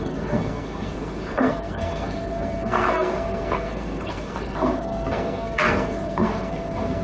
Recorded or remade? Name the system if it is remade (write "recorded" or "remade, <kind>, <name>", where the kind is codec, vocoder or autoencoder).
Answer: remade, codec, SNAC